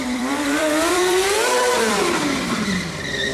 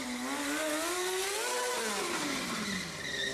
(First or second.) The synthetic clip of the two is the first